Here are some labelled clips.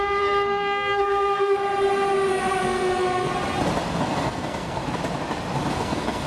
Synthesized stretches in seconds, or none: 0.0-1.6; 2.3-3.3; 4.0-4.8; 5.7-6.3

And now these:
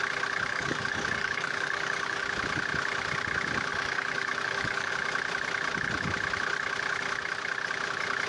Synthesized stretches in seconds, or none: 0.5-2.3; 3.7-4.9

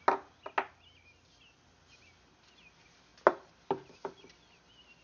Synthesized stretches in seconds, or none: none

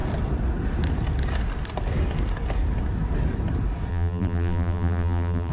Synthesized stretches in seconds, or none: 3.9-5.5

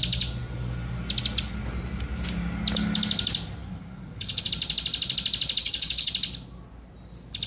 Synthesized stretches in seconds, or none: 3.6-4.5; 5.6-6.1

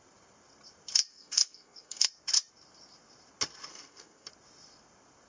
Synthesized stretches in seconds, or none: 1.1-2.1; 3.7-4.3